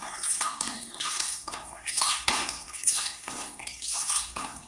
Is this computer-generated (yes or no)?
yes